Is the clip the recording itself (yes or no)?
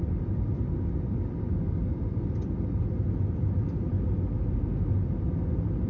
yes